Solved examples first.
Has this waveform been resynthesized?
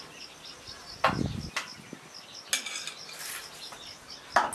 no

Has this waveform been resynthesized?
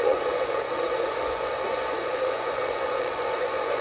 yes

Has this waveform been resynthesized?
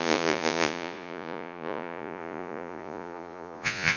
yes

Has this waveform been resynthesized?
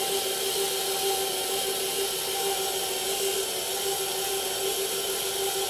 no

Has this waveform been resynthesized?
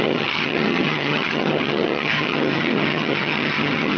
yes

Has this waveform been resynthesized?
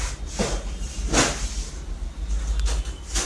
no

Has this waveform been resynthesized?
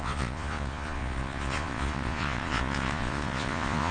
yes